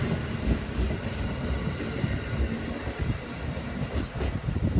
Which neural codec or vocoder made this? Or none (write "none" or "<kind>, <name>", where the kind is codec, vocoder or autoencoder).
none